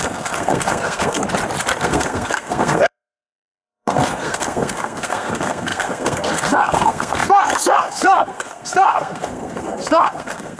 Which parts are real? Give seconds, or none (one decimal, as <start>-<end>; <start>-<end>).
1.2-1.8